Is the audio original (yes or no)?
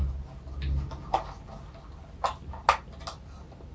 yes